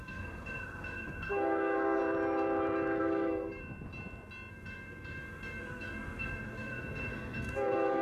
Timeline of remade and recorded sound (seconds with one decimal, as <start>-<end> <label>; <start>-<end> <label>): 0.0-2.0 remade; 2.0-3.0 recorded; 3.0-3.6 remade; 3.6-4.5 recorded; 4.5-8.0 remade